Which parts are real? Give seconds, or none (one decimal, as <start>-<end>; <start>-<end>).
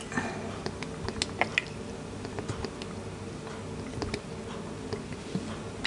0.0-5.9